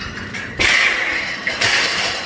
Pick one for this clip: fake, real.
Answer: fake